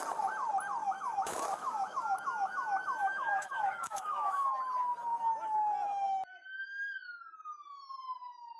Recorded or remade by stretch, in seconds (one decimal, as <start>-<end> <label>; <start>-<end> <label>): 0.0-0.8 recorded; 0.8-4.5 remade; 4.5-8.6 recorded